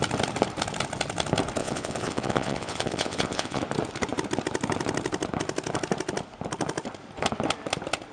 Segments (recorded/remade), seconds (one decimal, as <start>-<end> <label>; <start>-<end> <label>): 0.0-1.6 recorded; 1.6-3.6 remade; 3.6-8.1 recorded

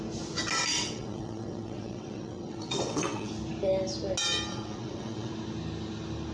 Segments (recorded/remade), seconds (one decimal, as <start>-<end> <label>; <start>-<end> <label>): 0.0-0.7 recorded; 0.7-3.3 remade; 3.3-4.5 recorded; 4.5-5.3 remade; 5.3-6.3 recorded